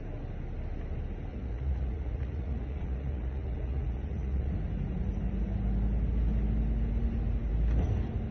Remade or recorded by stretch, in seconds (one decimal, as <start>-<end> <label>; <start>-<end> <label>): 0.0-1.3 recorded; 1.3-4.5 remade; 4.5-8.3 recorded